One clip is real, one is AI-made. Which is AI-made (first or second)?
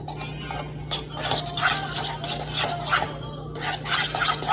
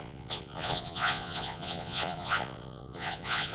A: second